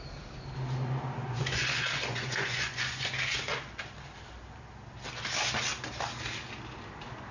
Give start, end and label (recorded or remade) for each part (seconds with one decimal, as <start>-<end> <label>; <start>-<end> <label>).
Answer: 0.0-1.2 recorded; 1.2-3.1 remade; 3.1-7.3 recorded